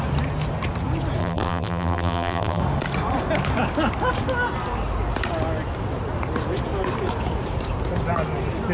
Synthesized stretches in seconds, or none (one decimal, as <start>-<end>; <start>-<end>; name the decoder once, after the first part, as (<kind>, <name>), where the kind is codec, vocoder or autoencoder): 1.2-2.6 (vocoder, BigVGAN v2)